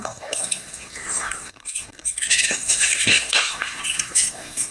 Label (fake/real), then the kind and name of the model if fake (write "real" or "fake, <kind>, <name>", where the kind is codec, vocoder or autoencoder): fake, codec, SNAC